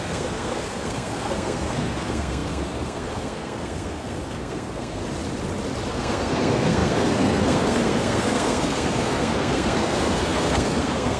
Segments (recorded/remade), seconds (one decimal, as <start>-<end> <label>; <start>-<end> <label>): 0.0-5.0 remade; 5.0-5.9 recorded; 5.9-11.2 remade